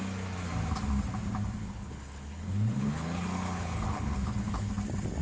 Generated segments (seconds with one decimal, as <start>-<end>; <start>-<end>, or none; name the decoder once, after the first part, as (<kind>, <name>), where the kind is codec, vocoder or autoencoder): 1.6-4.7 (codec, HILCodec)